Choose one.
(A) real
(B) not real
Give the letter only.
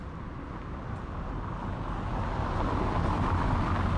A